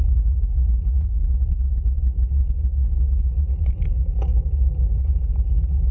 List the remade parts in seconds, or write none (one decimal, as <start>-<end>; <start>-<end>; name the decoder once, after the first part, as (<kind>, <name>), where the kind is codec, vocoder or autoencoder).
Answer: 0.0-1.2 (vocoder, Vocos); 3.4-4.3; 5.0-5.9